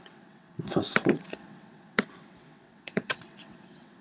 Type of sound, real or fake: fake